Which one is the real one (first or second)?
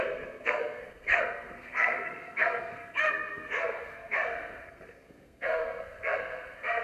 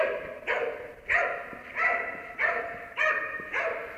second